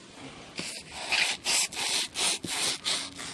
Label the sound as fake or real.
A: real